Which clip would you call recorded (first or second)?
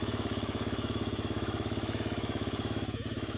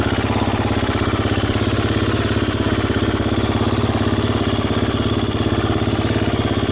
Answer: second